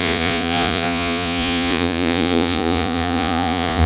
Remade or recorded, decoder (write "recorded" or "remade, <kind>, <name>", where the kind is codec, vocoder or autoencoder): remade, vocoder, Vocos